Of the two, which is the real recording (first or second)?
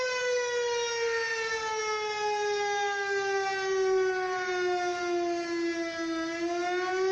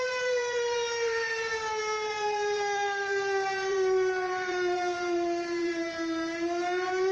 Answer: first